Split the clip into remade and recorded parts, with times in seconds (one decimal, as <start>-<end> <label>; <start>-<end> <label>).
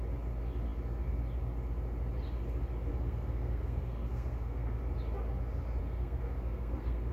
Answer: 0.0-2.9 recorded; 2.9-4.8 remade; 4.8-5.8 recorded; 5.8-7.1 remade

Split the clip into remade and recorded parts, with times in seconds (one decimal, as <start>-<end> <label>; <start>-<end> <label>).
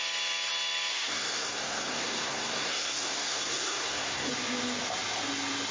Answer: 0.0-0.9 recorded; 0.9-4.3 remade; 4.3-5.7 recorded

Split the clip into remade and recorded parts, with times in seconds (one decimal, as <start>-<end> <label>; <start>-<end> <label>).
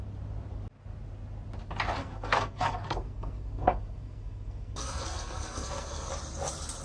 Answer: 0.0-2.0 recorded; 2.0-6.1 remade; 6.1-6.8 recorded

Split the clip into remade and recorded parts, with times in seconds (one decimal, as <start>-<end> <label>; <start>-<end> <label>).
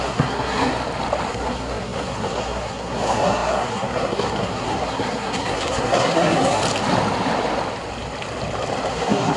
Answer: 0.0-0.7 remade; 0.7-1.3 recorded; 1.3-6.6 remade; 6.6-8.9 recorded; 8.9-9.4 remade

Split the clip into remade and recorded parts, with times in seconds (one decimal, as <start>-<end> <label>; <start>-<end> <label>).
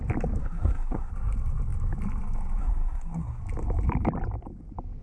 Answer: 0.0-0.4 recorded; 0.4-1.1 remade; 1.1-2.6 recorded; 2.6-3.4 remade; 3.4-5.0 recorded